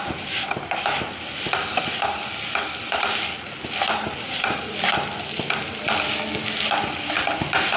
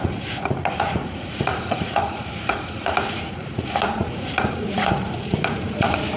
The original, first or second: first